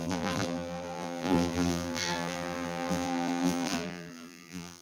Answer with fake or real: fake